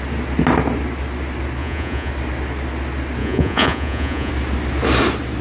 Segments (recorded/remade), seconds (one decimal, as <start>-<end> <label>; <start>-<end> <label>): 0.0-1.6 recorded; 1.6-2.1 remade; 2.1-3.2 recorded; 3.2-4.3 remade; 4.3-5.4 recorded

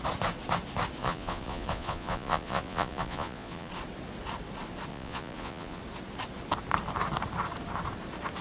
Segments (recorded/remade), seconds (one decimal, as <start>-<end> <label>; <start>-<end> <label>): 0.0-1.0 recorded; 1.0-3.7 remade; 3.7-4.9 recorded; 4.9-5.8 remade; 5.8-8.4 recorded

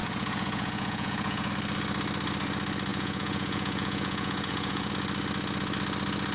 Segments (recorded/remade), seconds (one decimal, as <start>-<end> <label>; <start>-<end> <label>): 0.0-1.5 remade; 1.5-2.9 recorded; 2.9-4.9 remade; 4.9-6.3 recorded

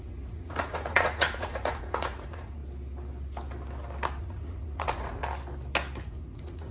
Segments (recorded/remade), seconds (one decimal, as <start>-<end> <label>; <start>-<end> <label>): 0.0-2.6 remade; 2.6-4.2 recorded; 4.2-5.2 remade; 5.2-6.0 recorded; 6.0-6.7 remade